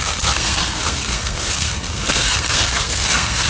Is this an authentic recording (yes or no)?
no